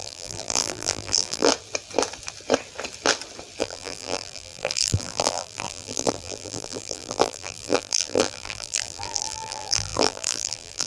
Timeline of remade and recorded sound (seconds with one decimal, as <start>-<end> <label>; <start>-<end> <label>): 0.0-1.5 remade; 1.5-3.6 recorded; 3.6-10.9 remade